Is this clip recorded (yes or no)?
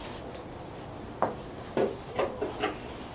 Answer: yes